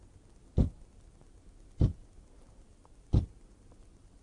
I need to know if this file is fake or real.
real